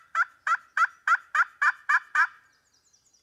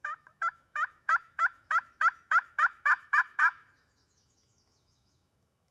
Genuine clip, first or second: first